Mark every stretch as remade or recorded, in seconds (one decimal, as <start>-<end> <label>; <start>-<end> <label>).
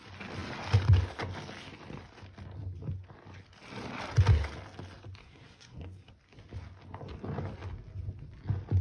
0.0-5.2 recorded; 5.2-6.1 remade; 6.1-8.8 recorded